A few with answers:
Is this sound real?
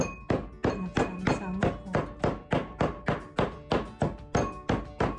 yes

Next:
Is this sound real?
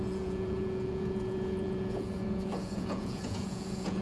no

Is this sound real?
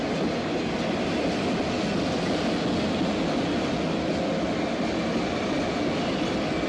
yes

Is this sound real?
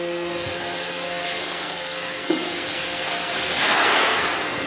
no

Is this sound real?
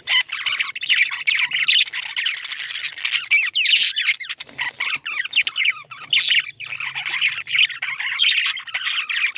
yes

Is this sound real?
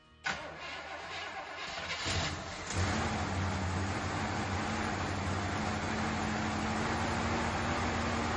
yes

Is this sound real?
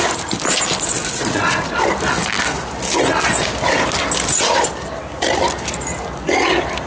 yes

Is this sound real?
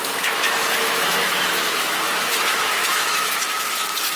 no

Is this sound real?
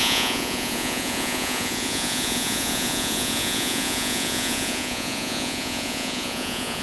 no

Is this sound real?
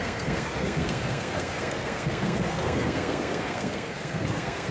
no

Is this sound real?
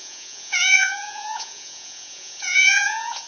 no